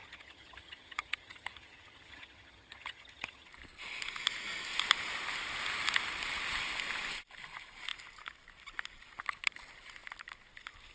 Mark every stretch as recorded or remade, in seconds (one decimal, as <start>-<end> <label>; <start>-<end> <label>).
0.0-3.5 remade; 3.5-10.9 recorded